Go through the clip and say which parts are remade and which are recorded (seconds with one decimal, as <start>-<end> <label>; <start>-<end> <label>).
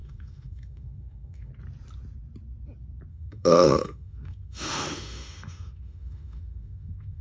0.0-1.5 remade; 1.5-3.1 recorded; 3.1-7.2 remade